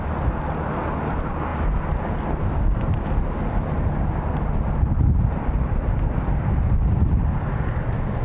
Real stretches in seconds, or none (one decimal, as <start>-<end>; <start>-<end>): 0.0-8.2